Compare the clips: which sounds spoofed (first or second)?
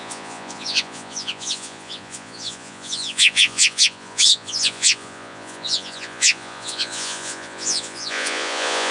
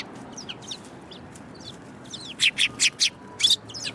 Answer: first